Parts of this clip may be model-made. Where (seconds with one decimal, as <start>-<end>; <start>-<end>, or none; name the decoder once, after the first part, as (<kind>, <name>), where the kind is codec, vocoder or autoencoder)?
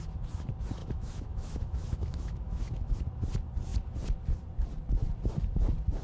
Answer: 0.8-3.0 (autoencoder, DAC-VAE)